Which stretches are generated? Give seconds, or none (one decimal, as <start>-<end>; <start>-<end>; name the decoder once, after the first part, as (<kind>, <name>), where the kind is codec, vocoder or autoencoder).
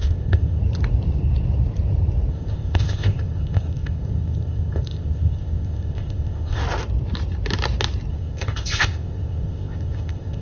0.0-0.6 (codec, ZipCodec); 2.3-6.6; 8.1-10.4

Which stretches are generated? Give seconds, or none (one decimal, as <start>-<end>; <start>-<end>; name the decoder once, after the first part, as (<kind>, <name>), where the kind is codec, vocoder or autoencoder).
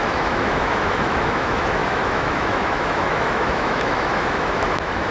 0.0-5.1 (autoencoder, DAC-VAE)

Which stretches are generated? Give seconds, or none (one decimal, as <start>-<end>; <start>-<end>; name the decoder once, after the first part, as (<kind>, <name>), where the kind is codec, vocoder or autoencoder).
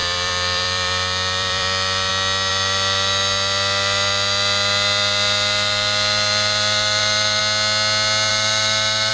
0.0-2.1 (vocoder, BigVGAN v2); 2.5-7.4; 8.3-9.1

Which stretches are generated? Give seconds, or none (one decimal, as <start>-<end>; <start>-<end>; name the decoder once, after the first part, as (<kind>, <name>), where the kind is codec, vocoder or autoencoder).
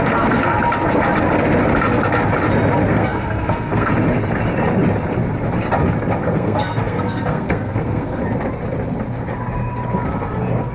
0.0-0.6 (codec, SNAC); 2.9-3.9; 6.2-8.2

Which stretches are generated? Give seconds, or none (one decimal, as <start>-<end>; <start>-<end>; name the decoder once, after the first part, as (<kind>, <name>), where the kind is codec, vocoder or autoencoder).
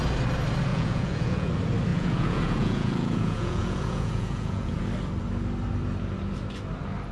0.7-1.5 (vocoder, Vocos); 1.9-4.8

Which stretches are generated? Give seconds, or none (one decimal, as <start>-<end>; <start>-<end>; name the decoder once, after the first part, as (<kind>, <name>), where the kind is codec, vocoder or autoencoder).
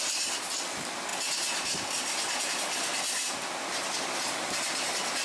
none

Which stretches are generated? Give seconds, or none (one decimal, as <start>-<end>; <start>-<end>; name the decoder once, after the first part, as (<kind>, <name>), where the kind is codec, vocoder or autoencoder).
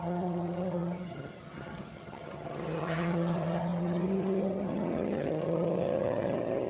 0.0-6.7 (vocoder, HiFi-GAN)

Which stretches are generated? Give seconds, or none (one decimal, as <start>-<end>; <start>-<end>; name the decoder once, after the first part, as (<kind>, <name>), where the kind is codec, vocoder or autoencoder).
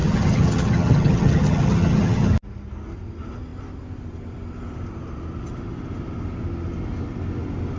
0.0-2.3 (vocoder, HiFi-GAN)